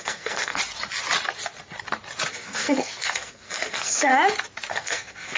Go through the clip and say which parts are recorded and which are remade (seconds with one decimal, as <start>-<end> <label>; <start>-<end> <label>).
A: 0.0-0.6 remade; 0.6-2.3 recorded; 2.3-4.1 remade; 4.1-4.7 recorded; 4.7-5.4 remade